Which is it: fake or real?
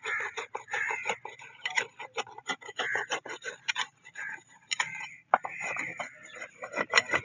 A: fake